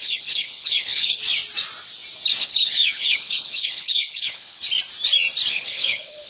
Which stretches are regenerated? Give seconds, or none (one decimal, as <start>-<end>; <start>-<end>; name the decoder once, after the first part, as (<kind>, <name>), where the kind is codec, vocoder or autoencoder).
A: 0.0-1.2 (codec, HILCodec); 2.4-4.6; 5.5-6.3